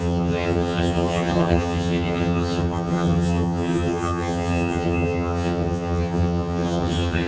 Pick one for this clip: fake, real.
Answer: fake